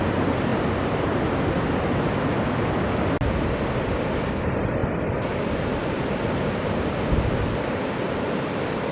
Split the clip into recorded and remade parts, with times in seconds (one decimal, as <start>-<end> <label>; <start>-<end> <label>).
0.0-8.9 recorded